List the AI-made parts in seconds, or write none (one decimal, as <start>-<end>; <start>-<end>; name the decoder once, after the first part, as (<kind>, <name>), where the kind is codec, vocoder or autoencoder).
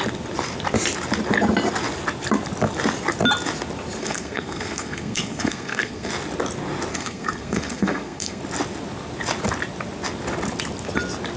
4.0-6.1 (codec, SNAC); 6.9-8.4